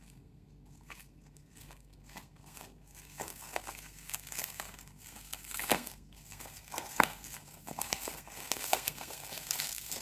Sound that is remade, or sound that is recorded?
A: remade